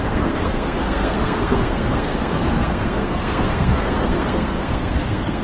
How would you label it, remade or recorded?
remade